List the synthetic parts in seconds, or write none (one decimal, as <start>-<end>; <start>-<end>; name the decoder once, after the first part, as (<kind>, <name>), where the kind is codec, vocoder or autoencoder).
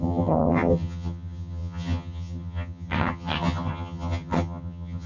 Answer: 0.0-5.1 (vocoder, HiFi-GAN)